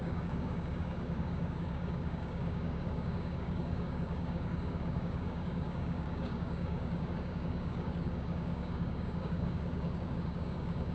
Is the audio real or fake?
fake